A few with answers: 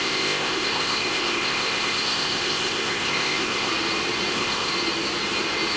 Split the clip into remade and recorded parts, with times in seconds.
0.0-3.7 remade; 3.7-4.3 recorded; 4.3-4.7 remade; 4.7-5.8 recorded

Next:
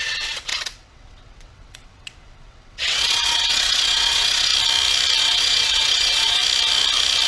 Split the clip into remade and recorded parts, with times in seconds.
0.0-4.5 remade; 4.5-5.2 recorded; 5.2-6.4 remade; 6.4-7.3 recorded

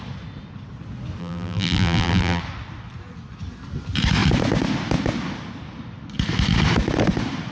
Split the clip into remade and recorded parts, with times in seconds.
0.0-1.2 recorded; 1.2-2.4 remade; 2.4-7.5 recorded

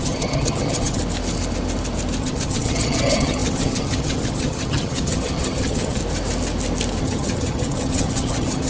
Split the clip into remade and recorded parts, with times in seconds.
0.0-1.0 remade; 1.0-2.2 recorded; 2.2-6.0 remade; 6.0-7.0 recorded; 7.0-8.7 remade